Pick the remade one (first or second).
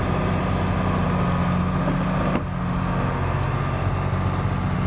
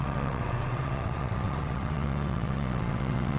second